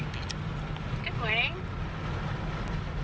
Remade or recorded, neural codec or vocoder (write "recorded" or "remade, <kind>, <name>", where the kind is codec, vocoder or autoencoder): recorded